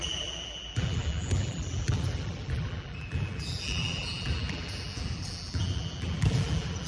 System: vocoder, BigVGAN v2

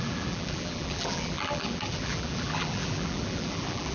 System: vocoder, BigVGAN v2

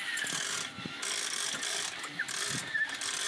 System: none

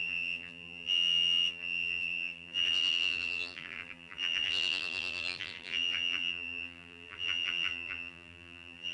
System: vocoder, BigVGAN v2